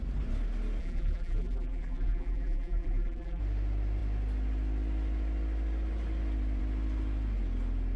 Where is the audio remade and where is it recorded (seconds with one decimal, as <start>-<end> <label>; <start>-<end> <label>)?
0.0-0.8 recorded; 0.8-3.4 remade; 3.4-8.0 recorded